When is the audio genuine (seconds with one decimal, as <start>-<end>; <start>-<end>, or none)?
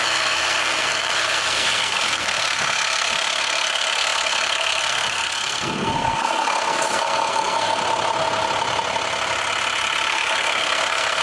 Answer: 7.8-10.1